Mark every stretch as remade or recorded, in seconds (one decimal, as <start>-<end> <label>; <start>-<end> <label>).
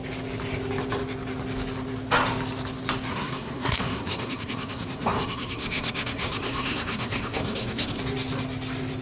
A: 0.0-3.1 recorded; 3.1-8.0 remade; 8.0-9.0 recorded